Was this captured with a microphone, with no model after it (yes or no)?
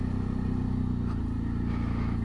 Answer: yes